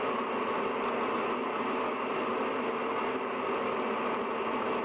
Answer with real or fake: real